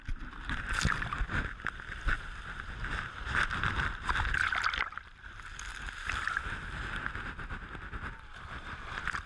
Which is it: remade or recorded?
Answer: recorded